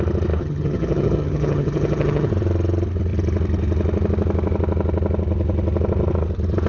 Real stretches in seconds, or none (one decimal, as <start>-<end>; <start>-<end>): 0.0-0.4; 2.3-6.7